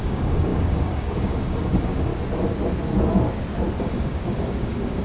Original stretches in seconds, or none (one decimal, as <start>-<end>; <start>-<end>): 2.1-3.8